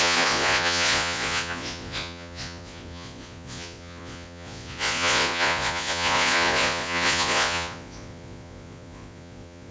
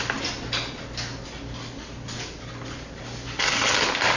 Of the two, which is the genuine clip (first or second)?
second